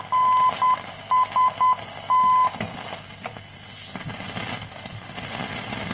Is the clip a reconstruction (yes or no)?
no